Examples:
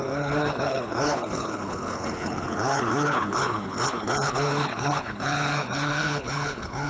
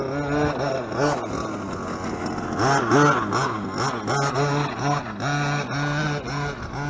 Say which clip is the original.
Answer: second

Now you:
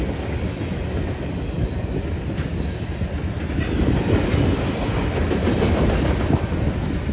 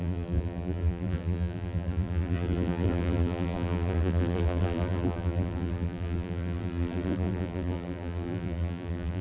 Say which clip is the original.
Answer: first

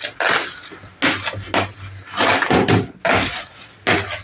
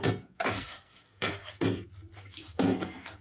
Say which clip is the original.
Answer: first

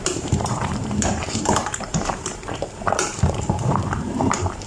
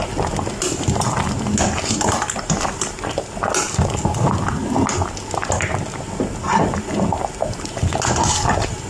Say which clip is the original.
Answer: second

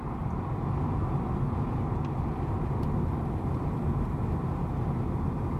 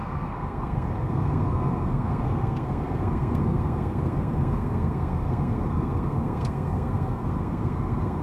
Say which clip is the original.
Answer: first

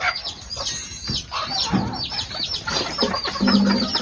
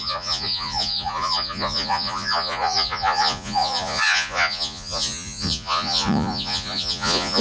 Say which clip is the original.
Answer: first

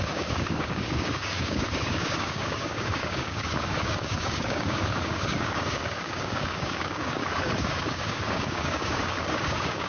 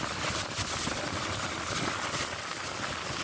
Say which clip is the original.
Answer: second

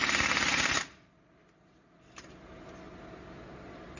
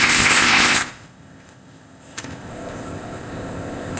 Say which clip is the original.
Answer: first